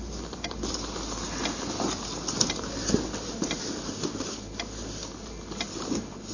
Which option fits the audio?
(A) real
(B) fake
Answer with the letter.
A